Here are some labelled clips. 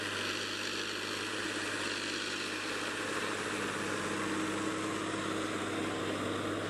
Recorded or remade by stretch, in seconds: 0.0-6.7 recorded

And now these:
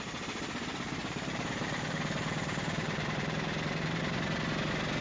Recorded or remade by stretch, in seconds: 0.0-1.0 recorded; 1.0-4.0 remade; 4.0-5.0 recorded